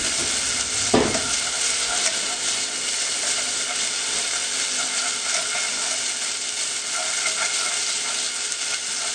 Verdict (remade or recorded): recorded